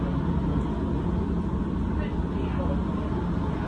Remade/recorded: recorded